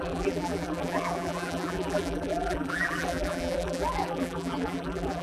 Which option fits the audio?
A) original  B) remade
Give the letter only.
B